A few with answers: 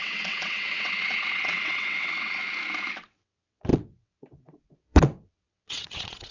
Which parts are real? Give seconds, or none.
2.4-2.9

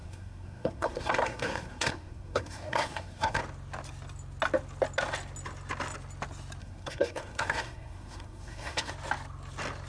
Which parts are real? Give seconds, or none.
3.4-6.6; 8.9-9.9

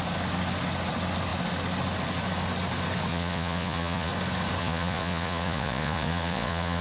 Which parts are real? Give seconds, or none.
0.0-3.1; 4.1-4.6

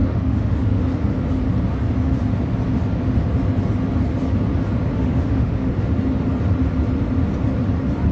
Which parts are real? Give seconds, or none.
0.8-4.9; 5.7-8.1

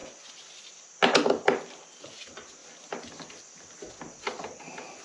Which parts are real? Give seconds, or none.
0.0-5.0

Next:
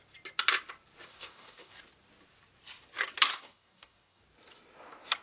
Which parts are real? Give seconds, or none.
0.0-1.1; 1.8-3.3; 4.2-5.2

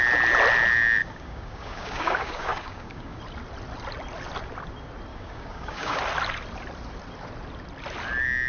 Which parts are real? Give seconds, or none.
0.0-1.0; 3.2-5.1; 6.0-8.5